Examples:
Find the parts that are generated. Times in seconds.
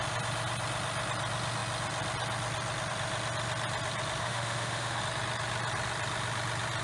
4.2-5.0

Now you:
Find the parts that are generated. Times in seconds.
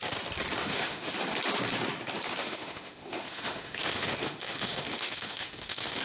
0.6-1.1; 2.4-6.0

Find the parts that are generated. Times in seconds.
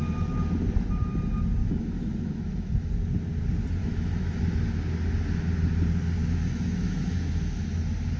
1.6-2.9; 3.8-4.4; 6.2-7.6